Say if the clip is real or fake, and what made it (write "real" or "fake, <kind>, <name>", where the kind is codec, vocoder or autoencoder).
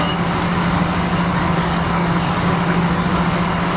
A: fake, codec, DAC